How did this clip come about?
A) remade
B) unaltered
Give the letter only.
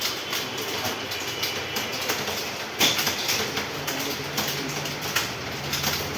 B